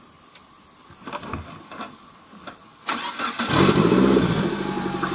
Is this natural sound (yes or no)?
yes